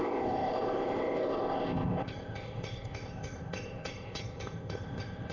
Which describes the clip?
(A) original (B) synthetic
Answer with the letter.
B